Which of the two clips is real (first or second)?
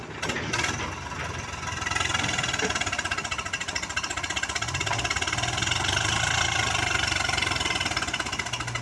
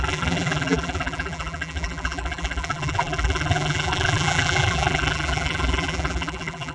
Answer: first